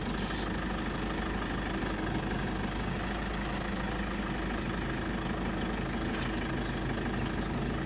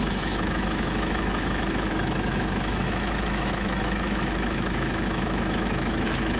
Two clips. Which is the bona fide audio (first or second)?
first